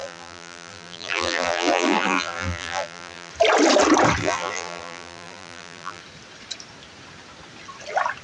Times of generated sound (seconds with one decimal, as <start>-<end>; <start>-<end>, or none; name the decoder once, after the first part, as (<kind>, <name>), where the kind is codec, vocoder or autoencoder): 0.0-3.3 (vocoder, BigVGAN v2); 4.2-6.0